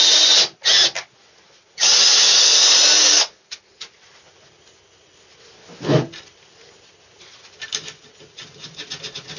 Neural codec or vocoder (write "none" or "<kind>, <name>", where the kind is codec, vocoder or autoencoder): none